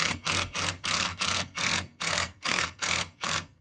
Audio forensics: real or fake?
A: fake